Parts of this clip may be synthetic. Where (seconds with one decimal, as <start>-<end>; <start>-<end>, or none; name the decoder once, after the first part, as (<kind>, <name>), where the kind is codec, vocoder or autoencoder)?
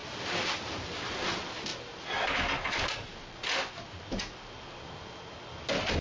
0.0-1.1 (vocoder, BigVGAN v2)